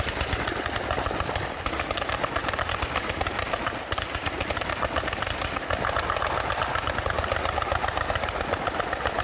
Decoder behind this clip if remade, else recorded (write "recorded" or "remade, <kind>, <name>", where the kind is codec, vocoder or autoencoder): recorded